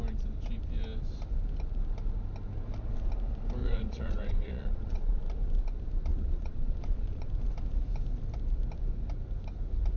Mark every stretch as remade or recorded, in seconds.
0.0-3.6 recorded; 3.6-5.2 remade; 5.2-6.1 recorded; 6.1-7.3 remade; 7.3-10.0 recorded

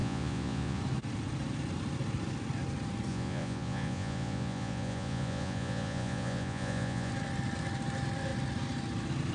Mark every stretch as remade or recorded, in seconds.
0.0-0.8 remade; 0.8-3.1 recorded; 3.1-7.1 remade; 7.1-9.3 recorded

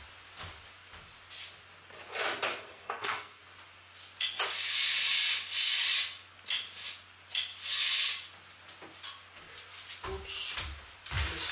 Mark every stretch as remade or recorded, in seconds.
0.0-2.5 recorded; 2.5-3.4 remade; 3.4-11.5 recorded